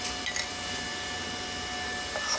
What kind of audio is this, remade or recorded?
recorded